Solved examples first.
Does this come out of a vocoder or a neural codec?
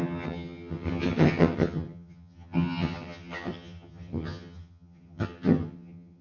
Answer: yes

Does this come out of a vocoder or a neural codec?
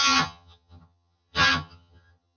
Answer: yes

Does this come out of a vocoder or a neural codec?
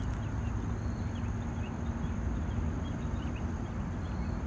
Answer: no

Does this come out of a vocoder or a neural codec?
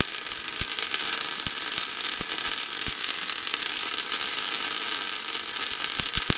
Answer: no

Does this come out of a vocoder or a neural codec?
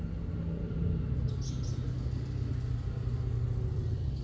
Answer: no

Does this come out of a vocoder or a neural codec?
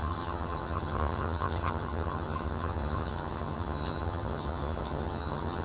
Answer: yes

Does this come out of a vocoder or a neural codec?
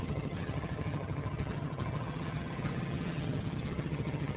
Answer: yes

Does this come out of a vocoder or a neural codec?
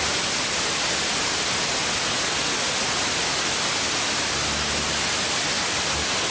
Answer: no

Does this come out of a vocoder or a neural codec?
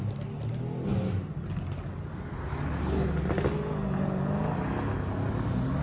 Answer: no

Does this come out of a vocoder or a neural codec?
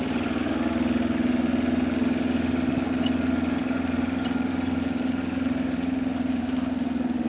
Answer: no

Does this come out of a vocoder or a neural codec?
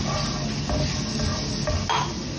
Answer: no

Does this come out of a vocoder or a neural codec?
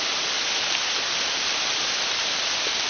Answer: no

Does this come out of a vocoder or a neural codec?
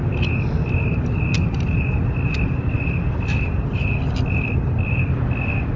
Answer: no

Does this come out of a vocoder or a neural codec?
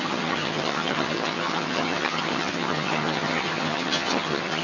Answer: yes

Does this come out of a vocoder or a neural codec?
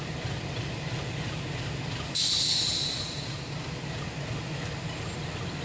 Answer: no